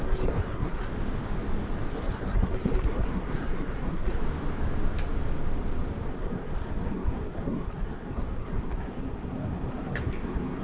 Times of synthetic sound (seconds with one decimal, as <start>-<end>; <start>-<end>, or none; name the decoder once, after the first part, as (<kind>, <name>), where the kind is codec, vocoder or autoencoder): 0.0-0.9 (codec, SNAC); 1.9-4.2; 6.1-10.6